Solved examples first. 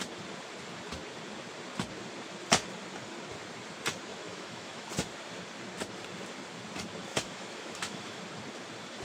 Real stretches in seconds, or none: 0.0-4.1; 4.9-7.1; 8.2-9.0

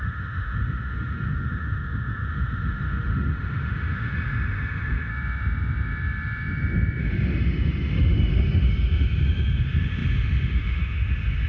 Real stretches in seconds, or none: 5.1-7.0

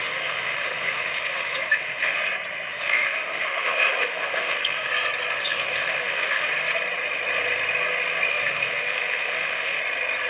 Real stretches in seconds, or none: 2.2-2.7; 4.9-5.4; 6.5-8.3; 9.8-10.3

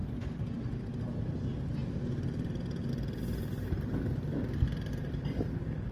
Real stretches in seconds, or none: 0.0-5.9

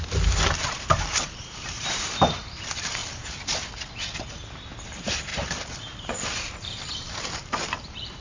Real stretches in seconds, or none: 3.0-4.8

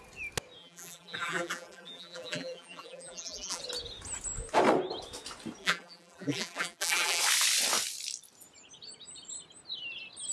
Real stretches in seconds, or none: 0.0-0.6; 3.6-5.6; 7.2-10.3